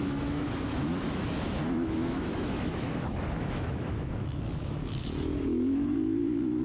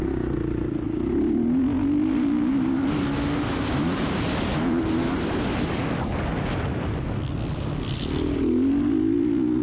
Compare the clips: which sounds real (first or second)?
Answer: second